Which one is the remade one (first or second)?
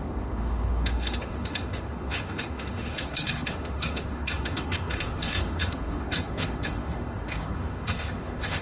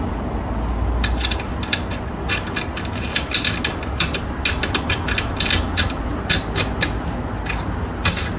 first